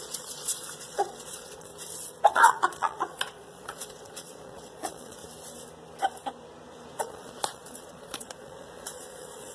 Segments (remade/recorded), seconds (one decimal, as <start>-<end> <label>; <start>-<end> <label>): 0.0-1.7 remade; 1.7-2.3 recorded; 2.3-5.2 remade; 5.2-7.0 recorded; 7.0-9.5 remade